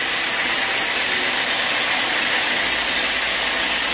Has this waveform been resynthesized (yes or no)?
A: no